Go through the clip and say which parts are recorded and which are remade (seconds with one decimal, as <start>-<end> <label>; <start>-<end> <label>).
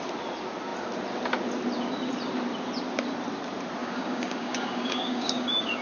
0.0-3.8 recorded; 3.8-5.8 remade